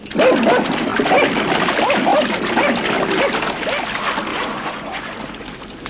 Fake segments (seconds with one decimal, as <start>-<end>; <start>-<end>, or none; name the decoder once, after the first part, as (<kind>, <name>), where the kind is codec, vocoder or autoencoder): 4.3-5.1 (vocoder, Vocos)